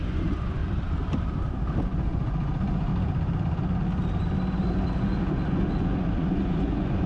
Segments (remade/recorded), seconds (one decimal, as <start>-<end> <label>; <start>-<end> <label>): 0.0-0.6 remade; 0.6-1.8 recorded; 1.8-2.9 remade; 2.9-5.0 recorded; 5.0-7.1 remade